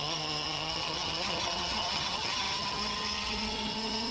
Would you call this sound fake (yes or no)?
yes